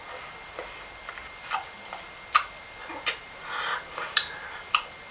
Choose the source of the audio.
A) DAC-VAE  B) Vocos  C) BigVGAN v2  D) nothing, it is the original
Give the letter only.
D